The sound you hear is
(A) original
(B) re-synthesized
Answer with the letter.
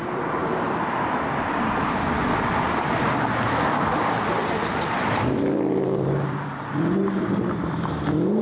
B